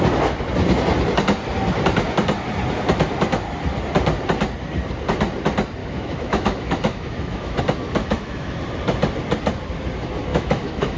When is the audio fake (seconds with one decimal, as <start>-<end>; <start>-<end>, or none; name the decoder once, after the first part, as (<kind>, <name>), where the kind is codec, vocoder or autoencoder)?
5.8-7.6 (autoencoder, DAC-VAE); 8.0-8.6; 10.3-11.0